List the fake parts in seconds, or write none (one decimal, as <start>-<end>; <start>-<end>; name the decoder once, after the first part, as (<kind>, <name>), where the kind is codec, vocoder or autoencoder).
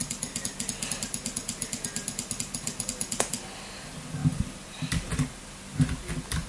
none